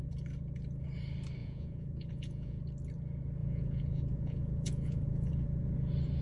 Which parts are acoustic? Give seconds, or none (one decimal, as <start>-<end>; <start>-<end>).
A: 0.0-1.4; 2.6-3.4; 5.3-6.2